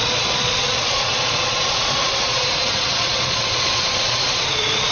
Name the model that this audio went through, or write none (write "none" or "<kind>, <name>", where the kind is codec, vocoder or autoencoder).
vocoder, Vocos